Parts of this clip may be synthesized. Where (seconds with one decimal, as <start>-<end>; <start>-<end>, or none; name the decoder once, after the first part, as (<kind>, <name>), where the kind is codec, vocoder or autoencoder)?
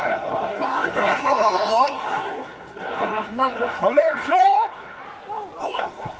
0.0-5.0 (codec, SNAC); 5.6-6.2